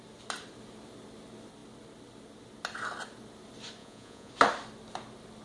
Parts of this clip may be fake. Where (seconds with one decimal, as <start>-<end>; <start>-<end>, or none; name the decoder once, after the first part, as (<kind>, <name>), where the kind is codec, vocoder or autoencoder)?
3.8-4.3 (vocoder, Vocos)